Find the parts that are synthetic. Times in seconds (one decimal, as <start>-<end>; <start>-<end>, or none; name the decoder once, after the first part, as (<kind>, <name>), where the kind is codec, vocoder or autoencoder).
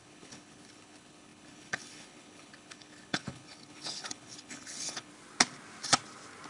0.0-5.1 (codec, HILCodec)